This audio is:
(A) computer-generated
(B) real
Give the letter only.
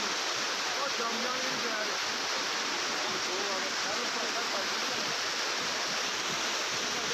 B